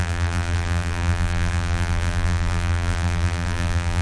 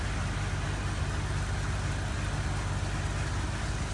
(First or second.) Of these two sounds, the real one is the second